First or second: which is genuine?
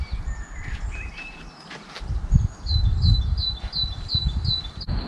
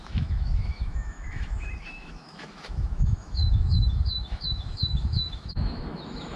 first